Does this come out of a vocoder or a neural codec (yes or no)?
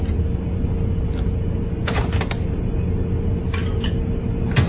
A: no